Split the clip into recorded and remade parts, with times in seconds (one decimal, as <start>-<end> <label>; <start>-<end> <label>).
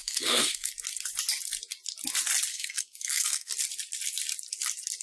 0.0-0.7 remade; 0.7-2.5 recorded; 2.5-3.5 remade; 3.5-5.0 recorded